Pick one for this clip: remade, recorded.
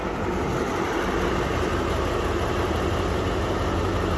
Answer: recorded